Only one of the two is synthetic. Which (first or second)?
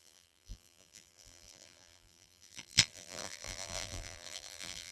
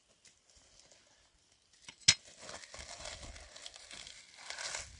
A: first